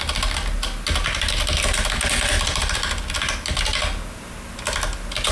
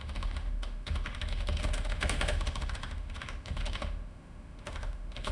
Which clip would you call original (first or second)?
first